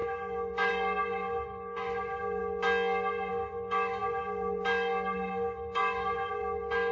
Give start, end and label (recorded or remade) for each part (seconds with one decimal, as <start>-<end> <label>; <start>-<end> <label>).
0.0-2.4 remade; 2.4-3.3 recorded; 3.3-6.9 remade